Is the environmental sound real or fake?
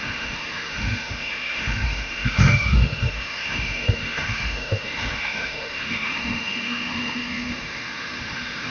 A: fake